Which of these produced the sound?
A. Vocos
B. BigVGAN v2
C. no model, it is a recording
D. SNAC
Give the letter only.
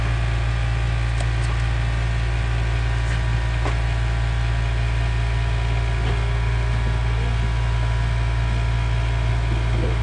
C